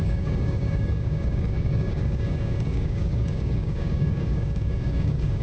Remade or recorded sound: remade